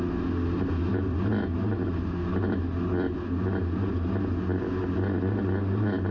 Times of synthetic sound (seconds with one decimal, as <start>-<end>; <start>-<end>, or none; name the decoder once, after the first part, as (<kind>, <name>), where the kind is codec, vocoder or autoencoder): none